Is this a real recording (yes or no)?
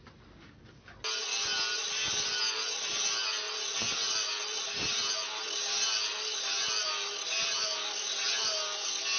yes